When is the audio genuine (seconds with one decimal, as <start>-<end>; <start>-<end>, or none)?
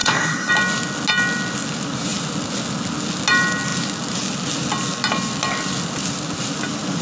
0.5-7.0